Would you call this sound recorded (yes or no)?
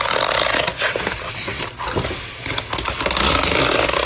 yes